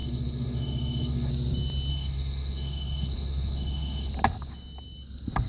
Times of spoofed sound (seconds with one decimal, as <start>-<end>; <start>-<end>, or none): 0.0-1.3; 1.9-4.1